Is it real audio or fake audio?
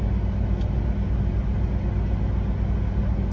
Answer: real